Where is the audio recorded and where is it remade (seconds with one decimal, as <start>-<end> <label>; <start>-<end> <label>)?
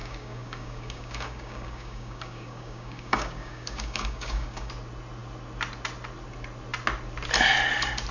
0.0-4.7 remade; 4.7-8.1 recorded